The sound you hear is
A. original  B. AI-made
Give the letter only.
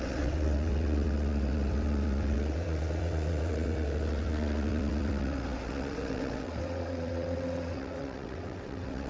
B